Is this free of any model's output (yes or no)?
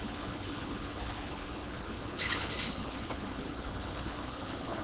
no